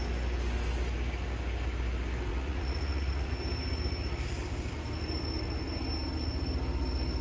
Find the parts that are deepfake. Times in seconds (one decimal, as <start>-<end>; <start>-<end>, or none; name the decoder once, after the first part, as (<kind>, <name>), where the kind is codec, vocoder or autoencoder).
2.3-3.3 (vocoder, Vocos)